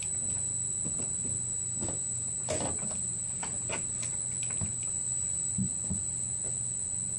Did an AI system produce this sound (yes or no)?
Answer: no